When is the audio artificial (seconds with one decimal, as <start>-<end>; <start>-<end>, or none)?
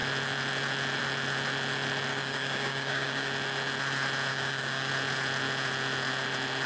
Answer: 2.1-3.3; 4.3-4.9